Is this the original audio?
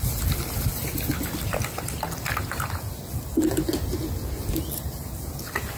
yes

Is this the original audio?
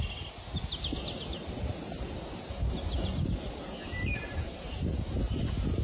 yes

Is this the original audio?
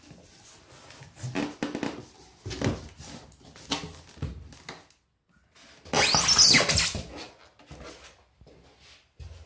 yes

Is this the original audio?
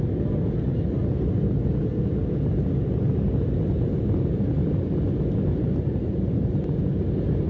yes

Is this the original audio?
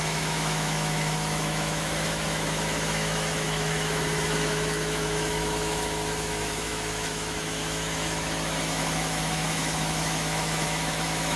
no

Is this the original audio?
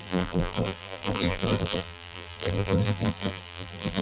no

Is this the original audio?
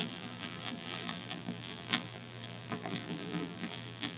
no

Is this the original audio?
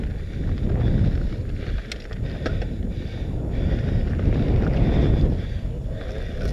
yes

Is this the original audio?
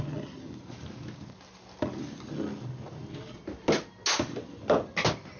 yes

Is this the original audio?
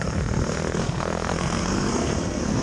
no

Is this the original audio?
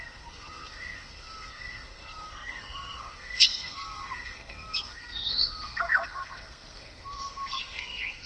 no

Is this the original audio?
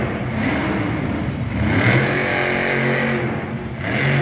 yes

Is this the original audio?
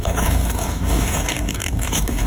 no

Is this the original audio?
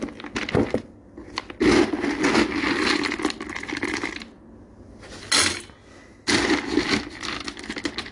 yes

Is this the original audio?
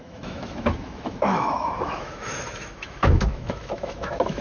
no